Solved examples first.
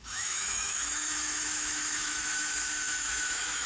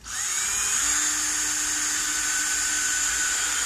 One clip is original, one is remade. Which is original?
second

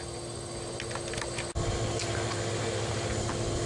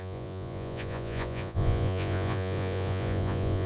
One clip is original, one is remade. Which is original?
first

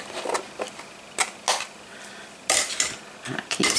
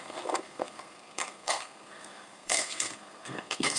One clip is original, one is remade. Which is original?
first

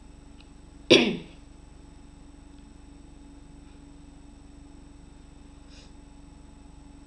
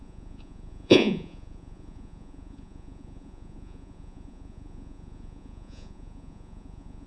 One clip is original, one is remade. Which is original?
first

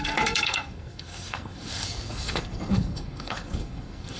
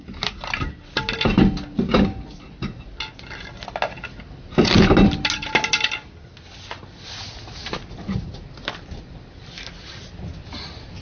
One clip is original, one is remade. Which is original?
second